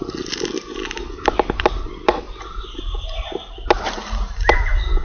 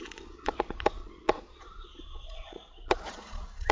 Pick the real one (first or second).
first